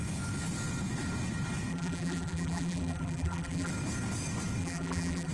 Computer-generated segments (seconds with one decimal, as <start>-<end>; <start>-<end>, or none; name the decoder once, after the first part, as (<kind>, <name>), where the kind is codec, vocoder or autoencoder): 1.7-3.7 (vocoder, BigVGAN v2); 4.6-5.3